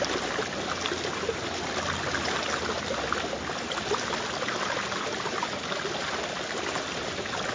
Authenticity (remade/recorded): recorded